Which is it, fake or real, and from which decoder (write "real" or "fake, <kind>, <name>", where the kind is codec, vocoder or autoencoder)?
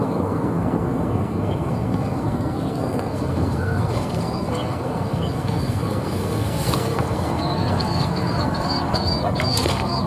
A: fake, codec, SNAC